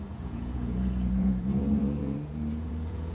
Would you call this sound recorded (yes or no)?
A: no